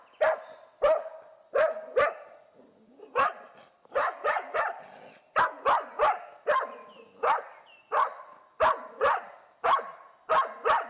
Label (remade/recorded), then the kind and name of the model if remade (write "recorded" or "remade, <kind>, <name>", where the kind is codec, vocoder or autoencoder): recorded